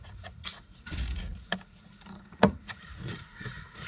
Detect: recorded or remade remade